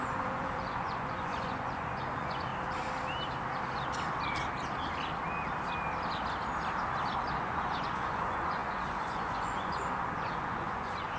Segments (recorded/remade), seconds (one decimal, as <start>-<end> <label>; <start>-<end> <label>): 0.0-2.5 remade; 2.5-7.4 recorded; 7.4-11.2 remade